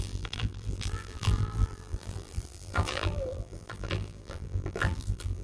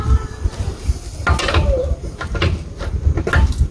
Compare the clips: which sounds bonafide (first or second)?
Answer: second